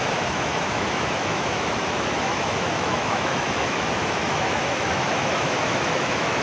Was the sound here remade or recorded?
remade